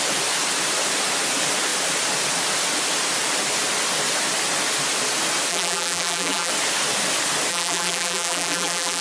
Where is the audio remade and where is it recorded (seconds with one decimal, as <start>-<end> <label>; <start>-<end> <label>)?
0.0-5.5 recorded; 5.5-6.5 remade; 6.5-7.5 recorded; 7.5-9.0 remade